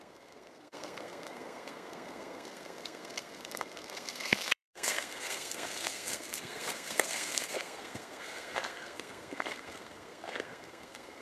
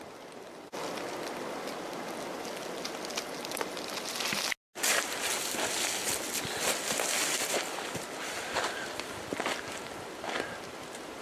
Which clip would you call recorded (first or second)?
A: second